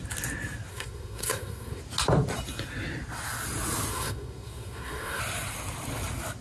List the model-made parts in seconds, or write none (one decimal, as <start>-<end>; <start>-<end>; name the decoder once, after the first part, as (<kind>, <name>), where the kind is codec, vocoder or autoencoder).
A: 0.7-1.8 (codec, SNAC); 3.9-5.2